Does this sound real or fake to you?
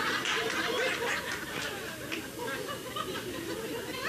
real